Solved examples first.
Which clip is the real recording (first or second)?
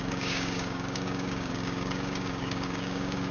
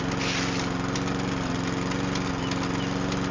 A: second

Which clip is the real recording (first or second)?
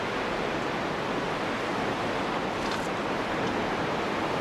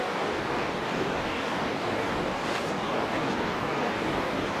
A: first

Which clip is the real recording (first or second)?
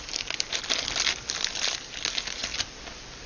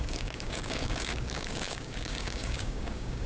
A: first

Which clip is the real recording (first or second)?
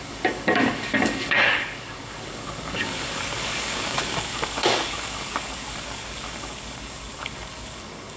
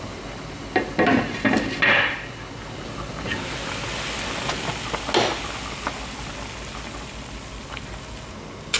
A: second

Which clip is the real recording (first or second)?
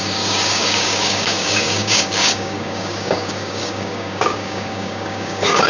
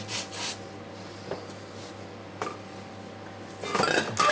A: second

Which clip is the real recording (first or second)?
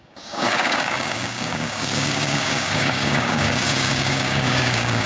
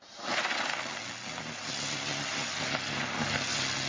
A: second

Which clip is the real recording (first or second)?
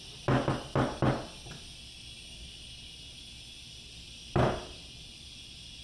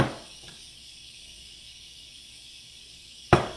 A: first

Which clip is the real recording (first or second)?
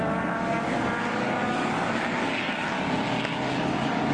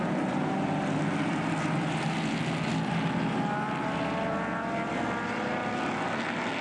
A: second